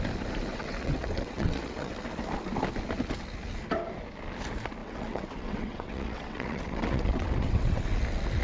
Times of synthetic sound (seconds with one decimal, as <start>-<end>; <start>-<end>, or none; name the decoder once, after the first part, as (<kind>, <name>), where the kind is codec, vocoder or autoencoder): 0.5-1.9 (vocoder, WaveNeXt); 4.8-7.8